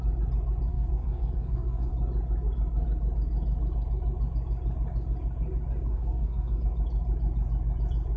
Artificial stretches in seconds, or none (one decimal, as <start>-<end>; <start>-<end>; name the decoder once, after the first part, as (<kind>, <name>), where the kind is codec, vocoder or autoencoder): 0.7-1.9 (codec, SNAC); 5.9-6.6